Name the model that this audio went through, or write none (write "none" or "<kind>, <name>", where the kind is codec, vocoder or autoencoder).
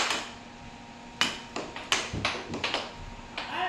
none